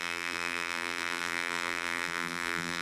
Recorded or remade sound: remade